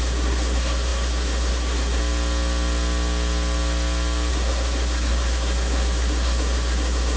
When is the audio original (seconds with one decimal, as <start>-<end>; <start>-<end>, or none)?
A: 2.0-4.3

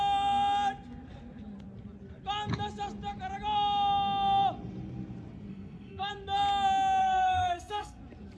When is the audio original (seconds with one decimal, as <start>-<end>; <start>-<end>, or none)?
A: 0.0-5.5; 6.1-7.0; 8.0-8.4